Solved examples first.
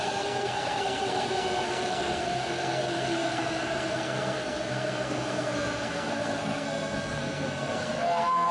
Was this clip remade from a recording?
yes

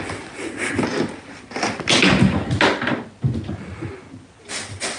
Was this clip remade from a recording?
no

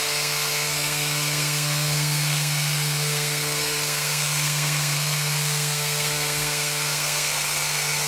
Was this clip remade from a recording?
yes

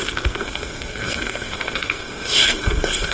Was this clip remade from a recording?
yes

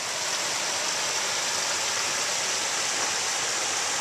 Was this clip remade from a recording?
no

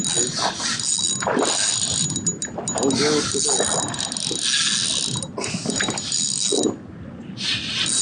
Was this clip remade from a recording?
no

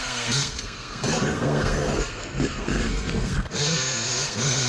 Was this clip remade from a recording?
yes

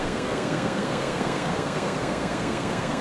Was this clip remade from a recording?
yes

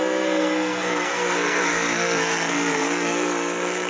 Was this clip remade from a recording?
yes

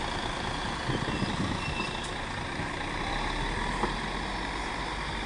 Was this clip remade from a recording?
no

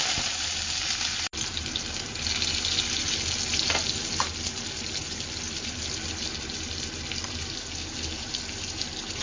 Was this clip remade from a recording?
no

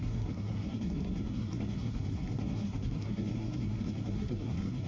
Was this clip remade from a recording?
yes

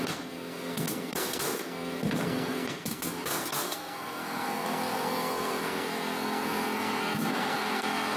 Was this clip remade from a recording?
yes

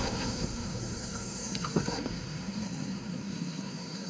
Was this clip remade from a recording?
yes